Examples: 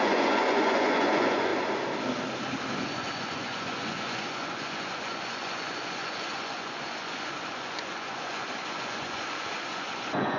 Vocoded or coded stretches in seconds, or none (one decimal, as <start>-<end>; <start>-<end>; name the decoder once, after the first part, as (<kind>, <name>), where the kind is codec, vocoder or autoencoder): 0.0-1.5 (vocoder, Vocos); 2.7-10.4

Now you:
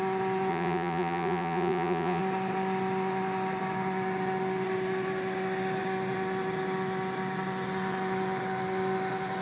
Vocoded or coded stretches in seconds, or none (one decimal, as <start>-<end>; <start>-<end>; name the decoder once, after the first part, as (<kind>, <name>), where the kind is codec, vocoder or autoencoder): 0.5-2.2 (vocoder, Vocos)

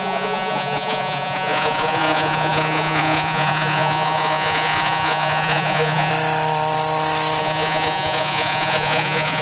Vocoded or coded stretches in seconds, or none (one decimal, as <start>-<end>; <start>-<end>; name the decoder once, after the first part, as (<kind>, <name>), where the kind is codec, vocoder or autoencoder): 0.0-6.1 (vocoder, Vocos); 7.4-9.4